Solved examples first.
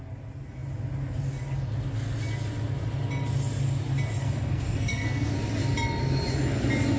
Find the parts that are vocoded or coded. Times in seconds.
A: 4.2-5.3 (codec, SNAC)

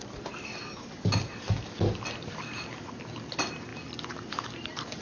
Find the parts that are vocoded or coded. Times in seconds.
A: none

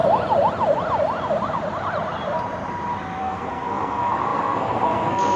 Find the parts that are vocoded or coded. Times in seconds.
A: 3.2-5.4 (codec, SNAC)

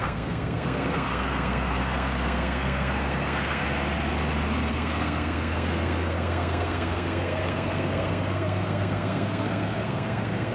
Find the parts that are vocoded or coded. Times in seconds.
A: 0.0-3.6 (codec, SNAC); 4.7-10.5